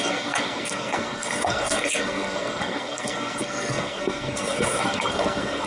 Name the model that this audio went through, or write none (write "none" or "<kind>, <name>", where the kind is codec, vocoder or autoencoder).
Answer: codec, SNAC